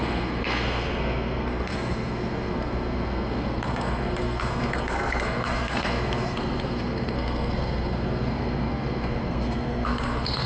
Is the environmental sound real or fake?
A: fake